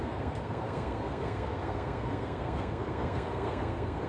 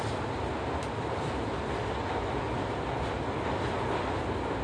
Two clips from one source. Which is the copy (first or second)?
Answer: first